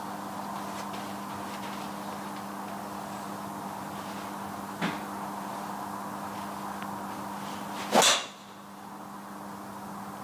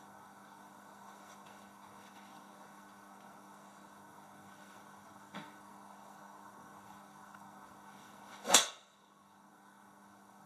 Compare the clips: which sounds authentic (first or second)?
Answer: first